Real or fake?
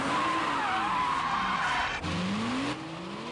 real